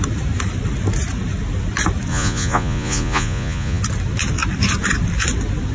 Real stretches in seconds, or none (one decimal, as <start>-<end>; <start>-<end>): 0.0-2.1; 3.8-5.7